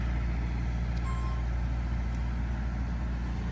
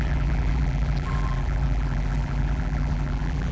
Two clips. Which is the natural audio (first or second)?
first